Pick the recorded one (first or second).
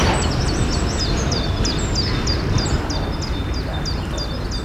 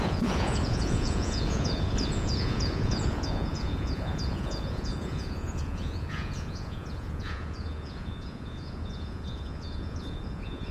first